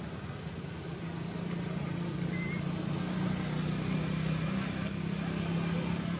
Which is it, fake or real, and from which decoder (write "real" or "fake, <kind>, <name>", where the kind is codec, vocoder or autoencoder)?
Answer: real